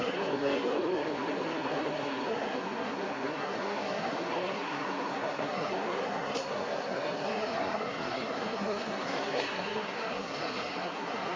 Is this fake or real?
fake